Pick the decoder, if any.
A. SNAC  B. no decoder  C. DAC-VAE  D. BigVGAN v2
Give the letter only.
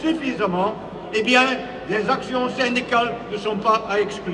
C